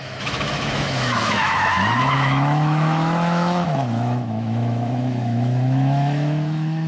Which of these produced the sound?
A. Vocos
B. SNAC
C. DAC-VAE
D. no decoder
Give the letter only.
C